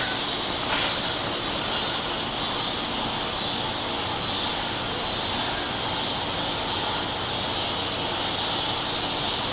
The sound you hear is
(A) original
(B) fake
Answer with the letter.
A